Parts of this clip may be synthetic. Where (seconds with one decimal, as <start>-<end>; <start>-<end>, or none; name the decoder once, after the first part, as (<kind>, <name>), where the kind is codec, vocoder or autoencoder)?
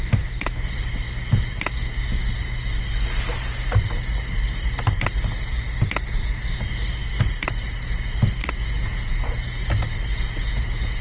8.4-9.7 (vocoder, Vocos); 10.1-11.0